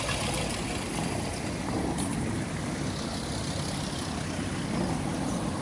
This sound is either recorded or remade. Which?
recorded